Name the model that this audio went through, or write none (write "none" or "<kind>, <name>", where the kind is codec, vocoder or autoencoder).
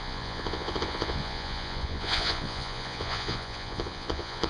vocoder, Vocos